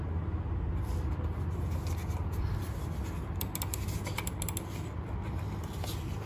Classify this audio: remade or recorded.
recorded